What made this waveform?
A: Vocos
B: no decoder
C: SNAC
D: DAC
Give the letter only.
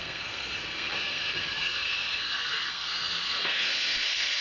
C